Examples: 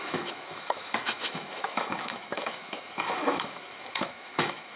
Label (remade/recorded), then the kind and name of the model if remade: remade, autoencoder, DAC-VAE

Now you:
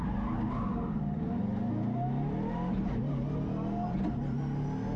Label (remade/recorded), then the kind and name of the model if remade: recorded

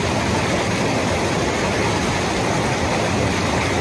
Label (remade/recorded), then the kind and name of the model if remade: recorded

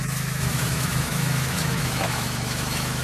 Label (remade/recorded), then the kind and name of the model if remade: remade, autoencoder, DAC-VAE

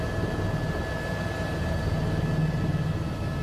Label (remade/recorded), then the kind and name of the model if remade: recorded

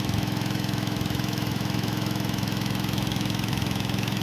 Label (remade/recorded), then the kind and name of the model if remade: remade, autoencoder, DAC-VAE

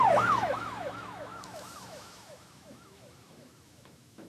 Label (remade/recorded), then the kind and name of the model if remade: remade, autoencoder, DAC-VAE